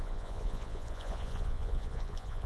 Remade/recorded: remade